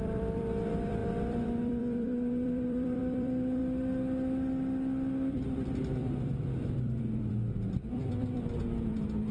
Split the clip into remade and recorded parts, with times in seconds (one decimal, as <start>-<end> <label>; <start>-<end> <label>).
0.0-3.6 remade; 3.6-5.3 recorded; 5.3-9.3 remade